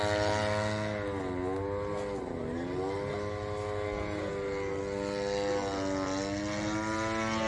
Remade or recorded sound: recorded